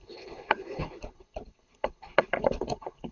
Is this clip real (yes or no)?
no